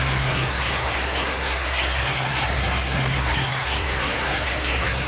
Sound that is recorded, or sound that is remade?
remade